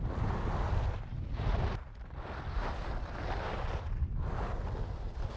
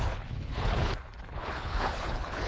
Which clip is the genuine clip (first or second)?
first